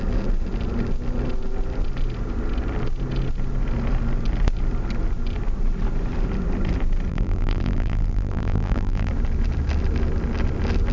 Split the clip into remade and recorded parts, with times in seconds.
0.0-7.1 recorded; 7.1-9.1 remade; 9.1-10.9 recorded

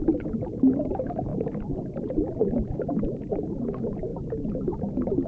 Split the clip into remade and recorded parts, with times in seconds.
0.0-4.1 remade; 4.1-5.3 recorded

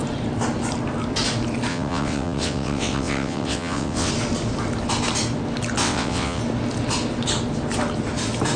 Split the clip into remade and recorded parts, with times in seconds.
0.0-1.7 recorded; 1.7-4.1 remade; 4.1-5.8 recorded; 5.8-6.4 remade; 6.4-8.6 recorded

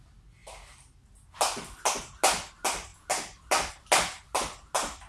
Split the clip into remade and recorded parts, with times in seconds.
0.0-5.1 recorded

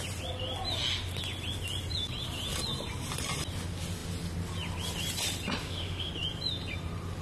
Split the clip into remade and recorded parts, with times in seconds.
0.0-5.6 recorded; 5.6-6.1 remade; 6.1-7.2 recorded

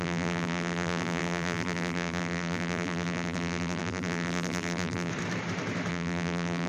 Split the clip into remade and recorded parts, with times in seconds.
0.0-5.1 remade; 5.1-5.9 recorded; 5.9-6.7 remade

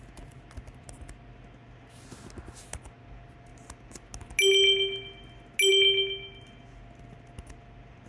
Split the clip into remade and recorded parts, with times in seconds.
0.0-8.1 recorded

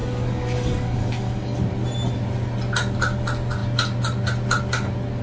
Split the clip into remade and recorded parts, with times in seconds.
0.0-1.6 remade; 1.6-5.2 recorded